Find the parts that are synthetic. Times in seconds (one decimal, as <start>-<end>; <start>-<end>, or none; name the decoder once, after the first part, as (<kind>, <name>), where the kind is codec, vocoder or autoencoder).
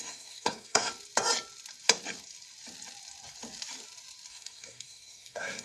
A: 0.0-0.9 (codec, SNAC); 4.3-5.6